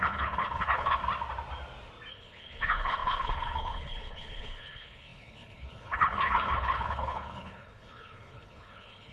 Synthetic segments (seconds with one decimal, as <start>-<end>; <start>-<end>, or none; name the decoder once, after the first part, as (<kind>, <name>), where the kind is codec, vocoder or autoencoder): 0.0-1.0 (codec, HILCodec); 2.1-9.1